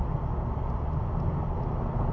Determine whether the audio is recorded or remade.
recorded